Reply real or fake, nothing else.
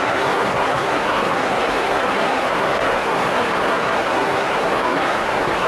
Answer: fake